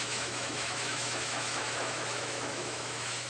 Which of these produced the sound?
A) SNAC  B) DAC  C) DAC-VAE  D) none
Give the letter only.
C